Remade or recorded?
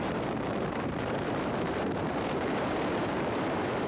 remade